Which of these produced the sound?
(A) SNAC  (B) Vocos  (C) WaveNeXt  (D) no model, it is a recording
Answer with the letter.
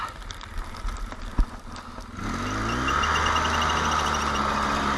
D